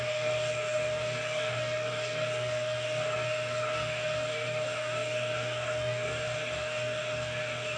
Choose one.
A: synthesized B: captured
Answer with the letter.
A